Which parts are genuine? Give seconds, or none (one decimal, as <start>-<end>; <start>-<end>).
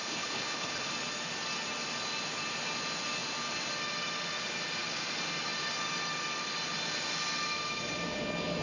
0.9-8.6